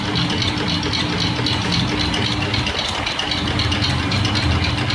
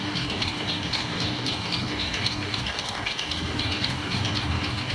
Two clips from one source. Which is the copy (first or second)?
second